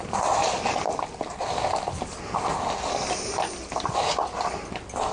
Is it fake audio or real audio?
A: real